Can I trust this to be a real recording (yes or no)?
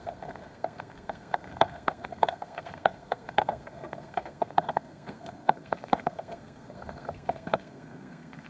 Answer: no